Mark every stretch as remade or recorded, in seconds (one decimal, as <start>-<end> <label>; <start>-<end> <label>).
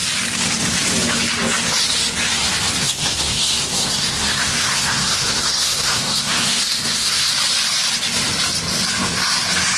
0.0-2.8 recorded; 2.8-7.3 remade; 7.3-9.8 recorded